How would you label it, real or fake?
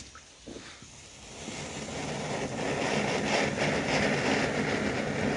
real